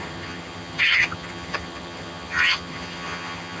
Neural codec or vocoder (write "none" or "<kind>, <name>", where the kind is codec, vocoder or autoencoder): vocoder, HiFi-GAN